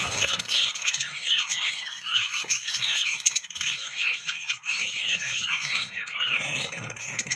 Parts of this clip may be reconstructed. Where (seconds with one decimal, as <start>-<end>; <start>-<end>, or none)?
0.0-7.4